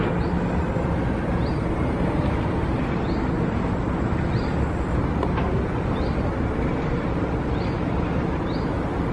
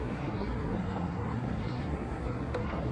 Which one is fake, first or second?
second